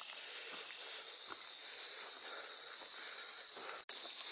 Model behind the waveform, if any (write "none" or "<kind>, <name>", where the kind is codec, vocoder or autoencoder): none